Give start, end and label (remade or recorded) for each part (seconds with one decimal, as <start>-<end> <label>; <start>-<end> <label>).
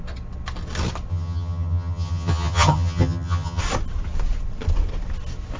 0.0-1.1 recorded; 1.1-3.6 remade; 3.6-5.6 recorded